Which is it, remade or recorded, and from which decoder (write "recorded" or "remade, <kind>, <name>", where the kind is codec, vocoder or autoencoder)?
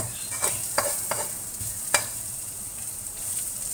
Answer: remade, vocoder, BigVGAN v2